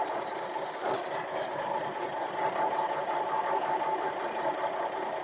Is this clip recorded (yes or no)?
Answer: yes